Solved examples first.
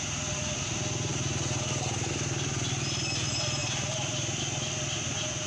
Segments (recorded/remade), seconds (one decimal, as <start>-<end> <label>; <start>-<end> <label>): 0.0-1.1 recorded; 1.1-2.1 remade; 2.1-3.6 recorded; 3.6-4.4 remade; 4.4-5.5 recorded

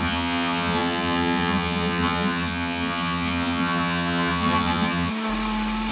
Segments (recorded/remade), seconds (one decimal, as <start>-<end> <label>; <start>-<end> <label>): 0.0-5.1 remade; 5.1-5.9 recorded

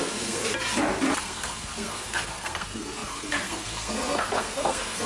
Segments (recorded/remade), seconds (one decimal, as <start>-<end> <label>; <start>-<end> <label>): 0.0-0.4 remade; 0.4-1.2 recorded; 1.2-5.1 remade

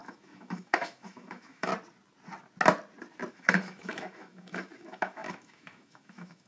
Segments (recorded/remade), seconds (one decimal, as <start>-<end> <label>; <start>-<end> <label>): 0.0-1.7 remade; 1.7-3.3 recorded; 3.3-6.5 remade

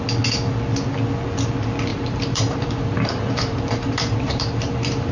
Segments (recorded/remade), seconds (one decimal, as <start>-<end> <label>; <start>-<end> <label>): 0.0-1.9 recorded; 1.9-5.1 remade